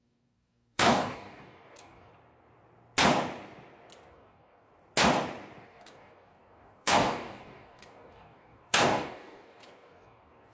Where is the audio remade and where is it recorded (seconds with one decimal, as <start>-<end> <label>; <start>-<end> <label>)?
0.0-2.1 remade; 2.1-4.1 recorded; 4.1-4.7 remade; 4.7-5.6 recorded; 5.6-10.5 remade